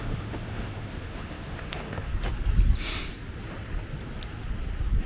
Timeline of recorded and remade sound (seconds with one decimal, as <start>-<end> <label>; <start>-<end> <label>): 0.0-2.1 remade; 2.1-5.1 recorded